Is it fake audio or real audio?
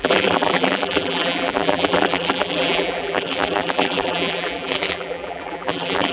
fake